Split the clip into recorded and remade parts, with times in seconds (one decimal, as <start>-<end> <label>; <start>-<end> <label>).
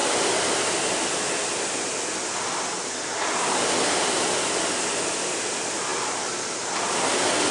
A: 0.0-7.5 recorded